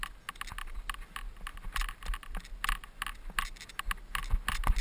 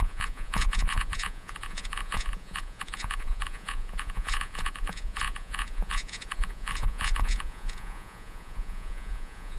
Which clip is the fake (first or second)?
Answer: second